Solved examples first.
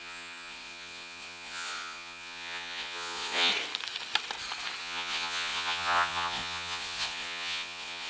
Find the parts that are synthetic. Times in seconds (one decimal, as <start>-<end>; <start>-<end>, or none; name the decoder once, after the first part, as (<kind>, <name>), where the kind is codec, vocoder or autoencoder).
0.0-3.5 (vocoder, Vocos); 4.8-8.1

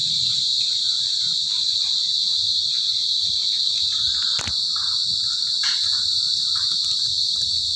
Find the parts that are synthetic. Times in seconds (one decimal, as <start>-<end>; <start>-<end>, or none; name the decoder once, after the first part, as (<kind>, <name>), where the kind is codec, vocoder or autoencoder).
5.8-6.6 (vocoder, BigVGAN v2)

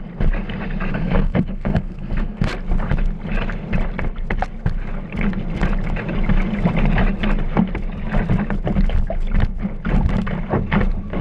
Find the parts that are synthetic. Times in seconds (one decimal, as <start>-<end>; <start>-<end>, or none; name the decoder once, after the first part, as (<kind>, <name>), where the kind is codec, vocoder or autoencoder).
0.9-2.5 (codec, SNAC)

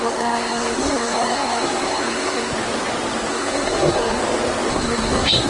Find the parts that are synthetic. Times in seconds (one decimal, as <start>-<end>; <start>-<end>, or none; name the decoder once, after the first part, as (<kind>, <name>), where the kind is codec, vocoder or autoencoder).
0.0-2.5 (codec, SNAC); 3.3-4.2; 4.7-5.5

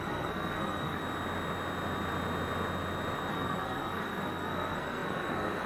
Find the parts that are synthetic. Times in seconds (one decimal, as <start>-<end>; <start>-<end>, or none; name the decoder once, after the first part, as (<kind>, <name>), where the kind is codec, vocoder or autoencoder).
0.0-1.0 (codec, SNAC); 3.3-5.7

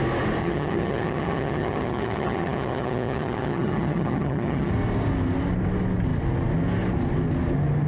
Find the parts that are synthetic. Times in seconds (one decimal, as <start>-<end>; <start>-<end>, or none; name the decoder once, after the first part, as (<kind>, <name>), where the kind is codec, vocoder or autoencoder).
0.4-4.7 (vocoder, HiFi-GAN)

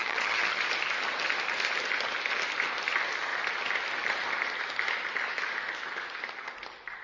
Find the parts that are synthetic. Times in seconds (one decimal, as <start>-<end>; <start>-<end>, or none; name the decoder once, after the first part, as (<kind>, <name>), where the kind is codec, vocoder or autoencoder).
0.0-0.6 (vocoder, HiFi-GAN)

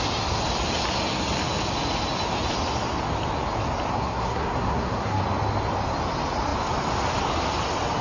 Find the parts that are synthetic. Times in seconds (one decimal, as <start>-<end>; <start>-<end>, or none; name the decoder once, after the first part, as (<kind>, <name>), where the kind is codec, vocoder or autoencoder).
3.9-5.2 (codec, SNAC)